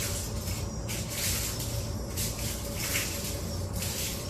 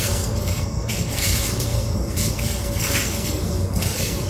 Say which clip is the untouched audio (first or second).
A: first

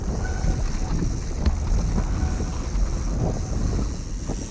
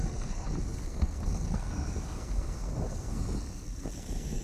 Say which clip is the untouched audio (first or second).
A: first